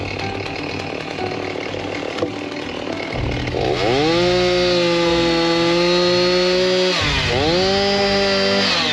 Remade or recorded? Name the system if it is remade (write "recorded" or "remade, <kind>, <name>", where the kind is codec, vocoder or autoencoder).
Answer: recorded